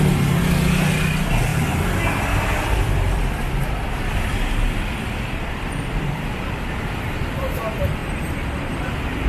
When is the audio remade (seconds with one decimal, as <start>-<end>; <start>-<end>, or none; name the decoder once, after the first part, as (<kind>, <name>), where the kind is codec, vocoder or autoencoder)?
1.5-6.3 (vocoder, BigVGAN v2)